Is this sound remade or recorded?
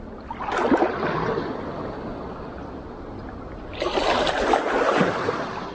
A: recorded